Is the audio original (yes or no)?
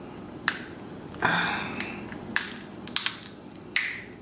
yes